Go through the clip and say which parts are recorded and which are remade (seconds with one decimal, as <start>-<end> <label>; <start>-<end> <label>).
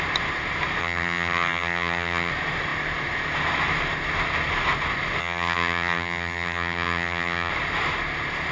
0.0-0.8 recorded; 0.8-2.3 remade; 2.3-5.2 recorded; 5.2-7.5 remade; 7.5-8.5 recorded